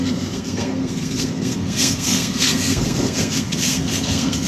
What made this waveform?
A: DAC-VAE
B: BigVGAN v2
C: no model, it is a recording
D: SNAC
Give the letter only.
D